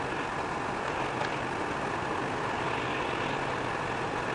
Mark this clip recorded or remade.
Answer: recorded